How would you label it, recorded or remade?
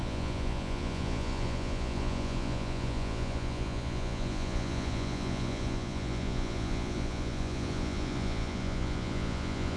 remade